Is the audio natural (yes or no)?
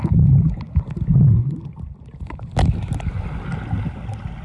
yes